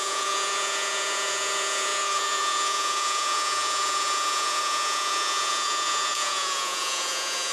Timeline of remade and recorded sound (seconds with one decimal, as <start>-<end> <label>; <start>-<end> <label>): 0.0-7.5 remade